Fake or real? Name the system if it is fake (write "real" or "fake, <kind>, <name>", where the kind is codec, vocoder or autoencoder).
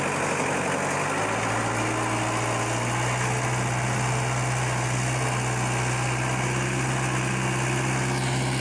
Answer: real